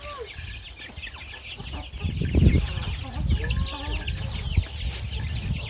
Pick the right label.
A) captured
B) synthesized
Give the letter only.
A